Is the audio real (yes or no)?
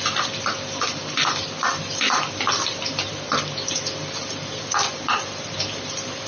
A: yes